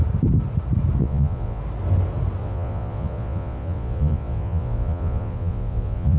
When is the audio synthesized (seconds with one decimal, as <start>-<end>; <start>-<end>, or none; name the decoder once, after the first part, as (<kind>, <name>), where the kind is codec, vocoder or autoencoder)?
1.0-1.6 (vocoder, Vocos); 2.4-6.2